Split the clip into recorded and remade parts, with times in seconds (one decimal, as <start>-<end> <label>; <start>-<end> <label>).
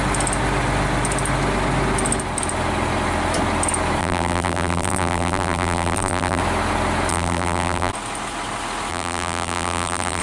0.0-4.0 recorded; 4.0-6.4 remade; 6.4-7.1 recorded; 7.1-7.9 remade; 7.9-8.9 recorded; 8.9-10.2 remade